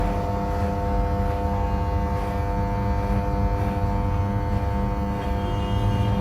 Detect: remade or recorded recorded